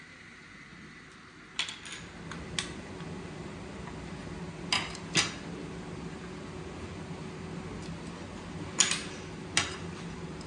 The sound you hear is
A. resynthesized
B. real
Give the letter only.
B